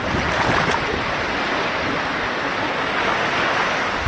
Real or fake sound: real